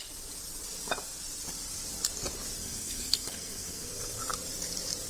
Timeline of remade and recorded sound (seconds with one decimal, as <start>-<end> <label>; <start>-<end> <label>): 0.0-2.6 recorded; 2.6-4.2 remade; 4.2-5.1 recorded